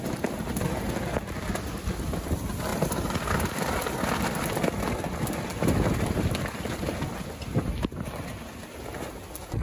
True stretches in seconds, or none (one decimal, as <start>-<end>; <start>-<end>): 0.0-9.6